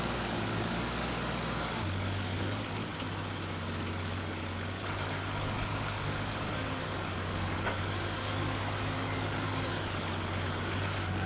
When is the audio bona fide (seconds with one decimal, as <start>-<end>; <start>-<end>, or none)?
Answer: 2.9-4.0